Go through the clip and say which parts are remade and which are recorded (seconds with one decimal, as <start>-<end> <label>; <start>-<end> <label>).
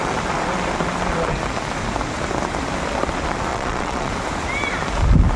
0.0-3.5 recorded; 3.5-4.1 remade; 4.1-5.4 recorded